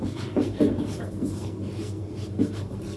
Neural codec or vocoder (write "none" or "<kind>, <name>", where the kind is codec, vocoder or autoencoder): codec, SNAC